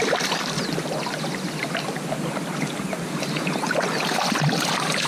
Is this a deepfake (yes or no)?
no